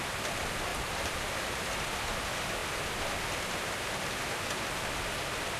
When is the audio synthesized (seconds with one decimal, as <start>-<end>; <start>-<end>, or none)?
0.7-1.7